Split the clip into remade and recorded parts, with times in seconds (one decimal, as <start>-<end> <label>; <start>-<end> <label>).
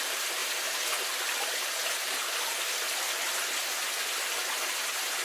0.0-5.2 recorded